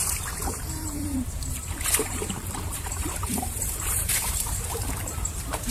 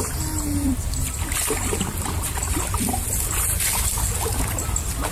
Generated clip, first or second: first